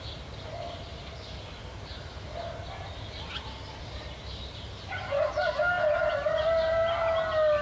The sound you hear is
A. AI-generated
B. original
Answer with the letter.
B